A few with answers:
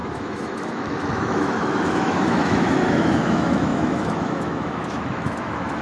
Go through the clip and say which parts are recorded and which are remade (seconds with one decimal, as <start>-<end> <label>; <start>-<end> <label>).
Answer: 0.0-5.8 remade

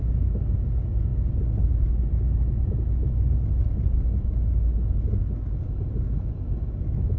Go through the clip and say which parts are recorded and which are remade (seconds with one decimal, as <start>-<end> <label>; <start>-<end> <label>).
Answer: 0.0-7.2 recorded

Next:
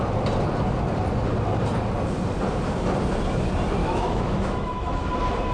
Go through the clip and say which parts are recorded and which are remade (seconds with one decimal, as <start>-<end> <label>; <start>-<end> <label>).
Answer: 0.0-3.8 recorded; 3.8-5.1 remade; 5.1-5.5 recorded

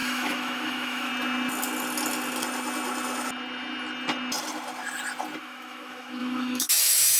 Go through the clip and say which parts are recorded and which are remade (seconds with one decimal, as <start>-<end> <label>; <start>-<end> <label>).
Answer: 0.0-1.1 remade; 1.1-5.4 recorded; 5.4-7.2 remade

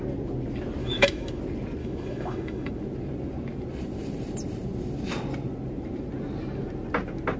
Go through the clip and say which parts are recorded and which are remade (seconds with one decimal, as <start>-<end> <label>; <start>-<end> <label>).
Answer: 0.0-0.8 recorded; 0.8-1.4 remade; 1.4-1.8 recorded; 1.8-2.7 remade; 2.7-7.4 recorded

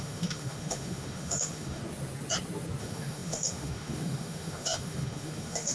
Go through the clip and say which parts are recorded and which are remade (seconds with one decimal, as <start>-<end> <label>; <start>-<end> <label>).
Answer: 0.0-1.8 remade; 1.8-2.8 recorded; 2.8-5.7 remade

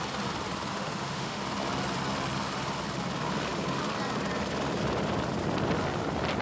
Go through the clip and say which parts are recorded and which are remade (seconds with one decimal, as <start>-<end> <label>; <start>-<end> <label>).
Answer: 0.0-0.7 recorded; 0.7-1.4 remade; 1.4-6.4 recorded